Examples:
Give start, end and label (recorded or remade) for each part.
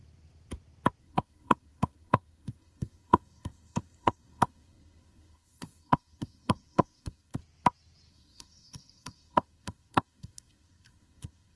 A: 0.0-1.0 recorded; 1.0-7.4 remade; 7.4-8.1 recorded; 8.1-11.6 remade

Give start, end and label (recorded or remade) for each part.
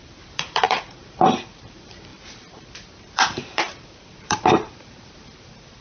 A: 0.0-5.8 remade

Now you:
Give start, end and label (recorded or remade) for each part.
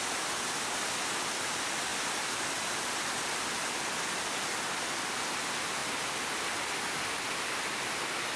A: 0.0-8.4 recorded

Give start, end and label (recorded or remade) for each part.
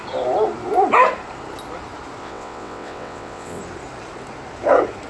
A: 0.0-2.2 recorded; 2.2-3.6 remade; 3.6-5.1 recorded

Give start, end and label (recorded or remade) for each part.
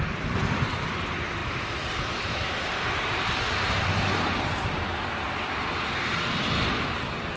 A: 0.0-7.4 recorded